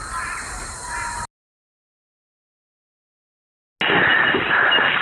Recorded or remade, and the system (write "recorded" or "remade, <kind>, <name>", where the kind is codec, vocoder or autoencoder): recorded